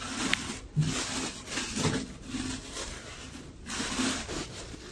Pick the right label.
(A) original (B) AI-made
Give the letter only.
A